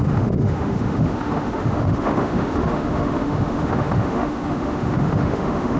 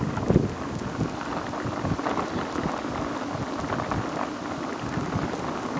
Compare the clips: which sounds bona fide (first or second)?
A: second